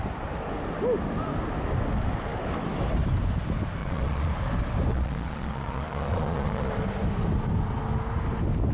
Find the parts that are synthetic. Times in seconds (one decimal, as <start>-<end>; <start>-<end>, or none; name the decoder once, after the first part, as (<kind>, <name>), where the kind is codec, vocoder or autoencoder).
3.8-4.3 (vocoder, Vocos); 4.9-6.7